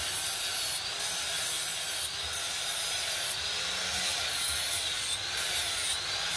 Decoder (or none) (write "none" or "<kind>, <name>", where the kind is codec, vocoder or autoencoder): none